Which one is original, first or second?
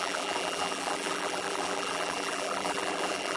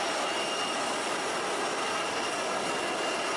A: second